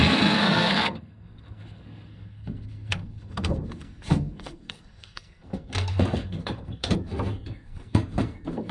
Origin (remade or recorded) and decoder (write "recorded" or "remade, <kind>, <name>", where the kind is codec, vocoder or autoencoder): remade, codec, SNAC